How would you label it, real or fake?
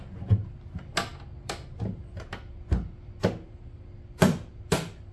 real